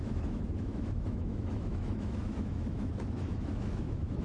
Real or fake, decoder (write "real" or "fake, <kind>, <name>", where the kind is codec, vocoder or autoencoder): fake, autoencoder, DAC-VAE